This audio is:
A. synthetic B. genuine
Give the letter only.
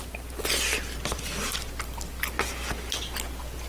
B